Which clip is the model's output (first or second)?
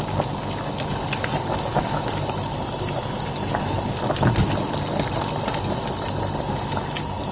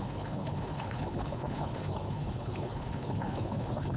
second